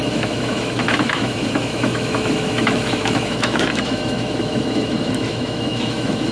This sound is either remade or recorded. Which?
remade